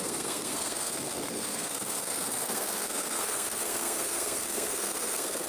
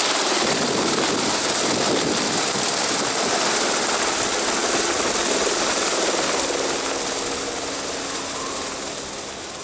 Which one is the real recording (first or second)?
second